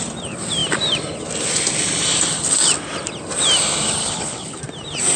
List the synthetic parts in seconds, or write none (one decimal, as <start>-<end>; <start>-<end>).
4.0-4.6